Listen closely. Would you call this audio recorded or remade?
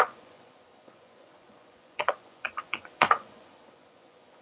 remade